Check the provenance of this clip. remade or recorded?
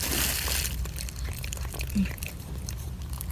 remade